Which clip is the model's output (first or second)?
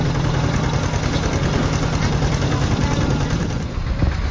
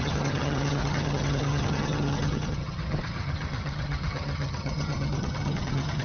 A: second